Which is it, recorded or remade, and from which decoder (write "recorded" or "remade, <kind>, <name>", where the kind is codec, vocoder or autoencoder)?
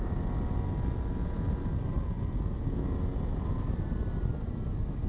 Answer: recorded